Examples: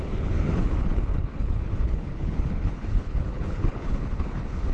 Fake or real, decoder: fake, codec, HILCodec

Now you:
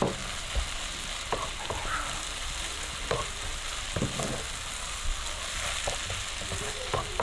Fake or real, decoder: real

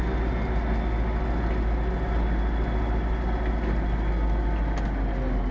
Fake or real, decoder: real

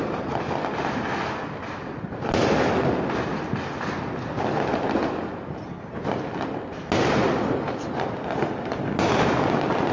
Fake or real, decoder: real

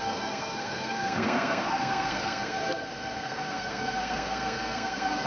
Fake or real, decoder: fake, codec, SNAC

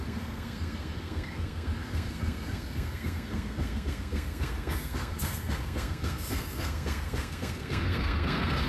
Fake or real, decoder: fake, codec, SNAC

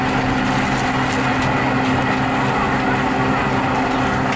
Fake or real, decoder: real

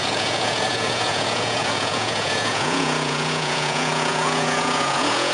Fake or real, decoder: fake, vocoder, Vocos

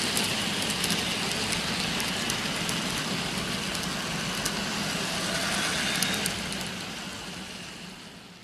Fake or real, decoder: real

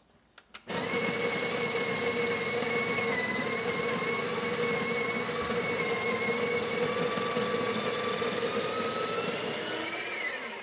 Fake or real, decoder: real